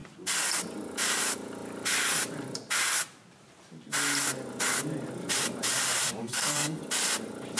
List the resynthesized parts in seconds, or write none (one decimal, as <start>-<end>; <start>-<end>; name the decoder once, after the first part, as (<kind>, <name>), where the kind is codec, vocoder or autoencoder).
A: 6.2-6.8 (codec, SNAC)